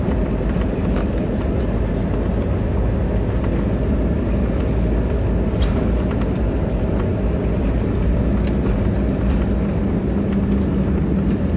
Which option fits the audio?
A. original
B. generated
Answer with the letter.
A